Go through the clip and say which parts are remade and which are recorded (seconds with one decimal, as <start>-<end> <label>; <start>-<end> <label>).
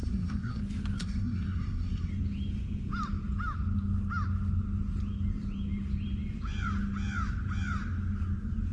0.0-0.6 remade; 0.6-1.0 recorded; 1.0-2.1 remade; 2.1-8.7 recorded